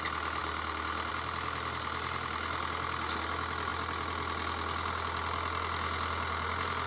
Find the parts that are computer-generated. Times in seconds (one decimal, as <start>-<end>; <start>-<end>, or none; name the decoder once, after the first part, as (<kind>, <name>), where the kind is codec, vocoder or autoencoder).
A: none